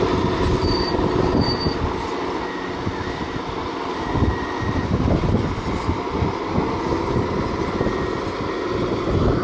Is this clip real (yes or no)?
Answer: yes